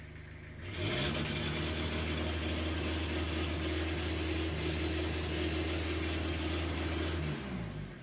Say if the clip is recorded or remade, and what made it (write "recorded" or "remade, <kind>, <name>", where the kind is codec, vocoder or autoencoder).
recorded